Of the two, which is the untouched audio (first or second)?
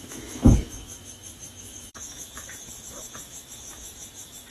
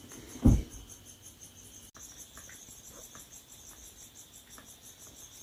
second